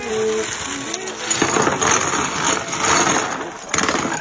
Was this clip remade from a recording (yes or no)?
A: no